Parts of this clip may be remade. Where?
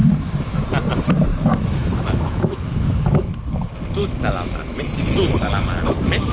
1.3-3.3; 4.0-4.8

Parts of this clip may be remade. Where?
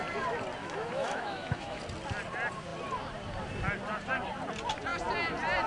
0.6-1.8